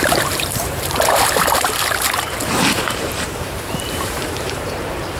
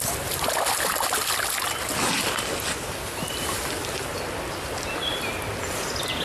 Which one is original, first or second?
second